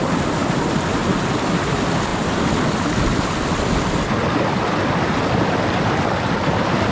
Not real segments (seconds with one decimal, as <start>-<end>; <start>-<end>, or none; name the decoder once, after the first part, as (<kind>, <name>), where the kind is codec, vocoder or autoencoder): none

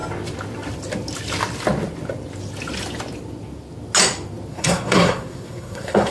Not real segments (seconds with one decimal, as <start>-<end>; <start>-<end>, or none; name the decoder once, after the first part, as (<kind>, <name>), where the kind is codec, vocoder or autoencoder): 4.5-6.1 (codec, SNAC)

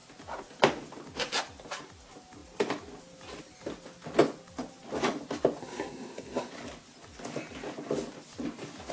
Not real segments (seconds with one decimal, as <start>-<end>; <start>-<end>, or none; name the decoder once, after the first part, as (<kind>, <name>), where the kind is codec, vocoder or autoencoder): 5.6-6.5 (codec, SNAC)

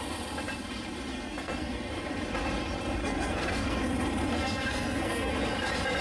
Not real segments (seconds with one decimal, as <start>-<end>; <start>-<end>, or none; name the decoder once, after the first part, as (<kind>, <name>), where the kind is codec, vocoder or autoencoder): 1.1-1.9 (codec, SNAC); 3.0-3.8; 4.3-5.3

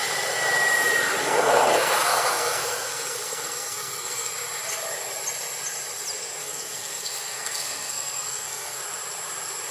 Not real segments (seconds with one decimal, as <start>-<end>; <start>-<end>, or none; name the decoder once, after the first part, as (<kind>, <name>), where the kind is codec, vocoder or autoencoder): 1.2-4.3 (codec, SNAC); 6.4-8.8